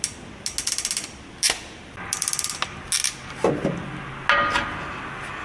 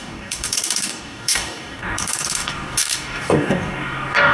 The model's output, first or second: second